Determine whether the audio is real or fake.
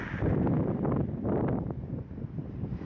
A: real